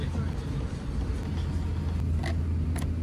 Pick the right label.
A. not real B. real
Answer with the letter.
B